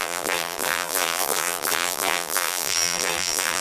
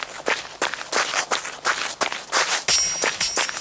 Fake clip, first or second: first